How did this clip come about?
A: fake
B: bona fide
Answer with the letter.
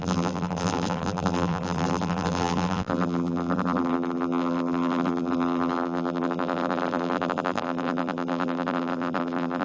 A